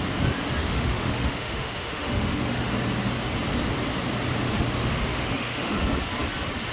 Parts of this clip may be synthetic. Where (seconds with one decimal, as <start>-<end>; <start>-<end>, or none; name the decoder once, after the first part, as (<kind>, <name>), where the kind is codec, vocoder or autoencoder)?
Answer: 0.6-2.7 (autoencoder, DAC-VAE); 4.8-5.8